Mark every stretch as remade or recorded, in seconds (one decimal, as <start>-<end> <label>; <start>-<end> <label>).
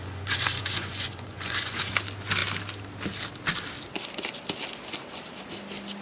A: 0.0-1.9 remade; 1.9-6.0 recorded